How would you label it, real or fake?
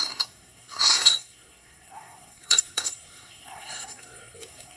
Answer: fake